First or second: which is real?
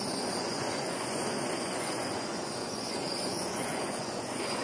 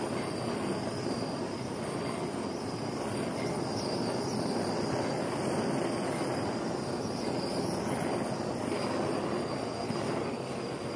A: second